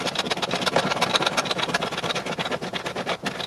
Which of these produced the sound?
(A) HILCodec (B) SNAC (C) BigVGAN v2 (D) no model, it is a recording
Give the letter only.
C